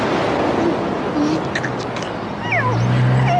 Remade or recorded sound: recorded